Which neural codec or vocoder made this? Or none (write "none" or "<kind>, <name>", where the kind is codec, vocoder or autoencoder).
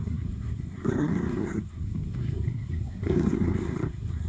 codec, SNAC